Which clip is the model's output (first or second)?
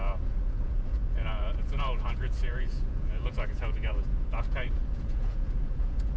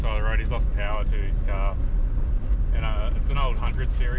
first